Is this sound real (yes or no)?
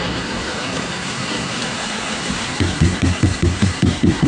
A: no